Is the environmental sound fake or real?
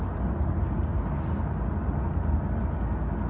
real